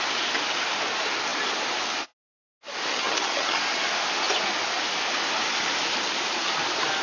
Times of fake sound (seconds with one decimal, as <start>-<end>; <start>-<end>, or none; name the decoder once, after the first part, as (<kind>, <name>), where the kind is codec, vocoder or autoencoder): 2.9-3.6 (vocoder, HiFi-GAN)

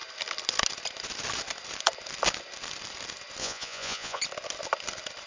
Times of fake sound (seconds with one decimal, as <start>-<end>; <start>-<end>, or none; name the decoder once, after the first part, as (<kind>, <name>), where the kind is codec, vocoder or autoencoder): 3.4-4.2 (vocoder, Vocos)